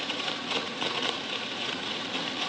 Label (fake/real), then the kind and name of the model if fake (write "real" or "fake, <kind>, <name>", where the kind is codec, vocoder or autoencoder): fake, vocoder, Vocos